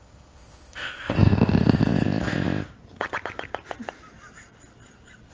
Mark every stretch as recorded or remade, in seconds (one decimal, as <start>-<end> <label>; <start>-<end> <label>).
0.0-2.7 remade; 2.7-5.3 recorded